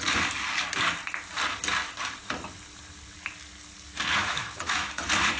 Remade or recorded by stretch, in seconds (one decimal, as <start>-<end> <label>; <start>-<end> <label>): 0.0-4.2 recorded; 4.2-5.0 remade; 5.0-5.4 recorded